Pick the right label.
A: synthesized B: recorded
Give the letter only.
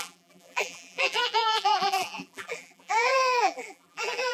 A